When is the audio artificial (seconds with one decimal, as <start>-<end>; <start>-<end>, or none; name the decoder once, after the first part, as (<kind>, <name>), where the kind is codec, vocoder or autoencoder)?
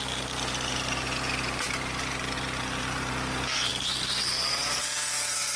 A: 0.0-5.6 (vocoder, BigVGAN v2)